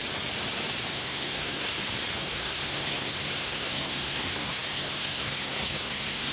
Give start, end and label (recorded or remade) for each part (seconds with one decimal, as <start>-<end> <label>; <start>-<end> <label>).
0.0-0.9 recorded; 0.9-1.7 remade; 1.7-2.2 recorded; 2.2-6.3 remade